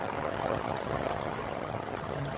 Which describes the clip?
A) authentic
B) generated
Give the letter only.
B